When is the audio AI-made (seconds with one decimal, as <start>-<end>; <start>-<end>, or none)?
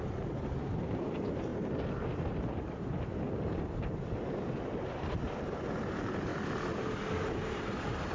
0.0-6.3; 7.3-8.1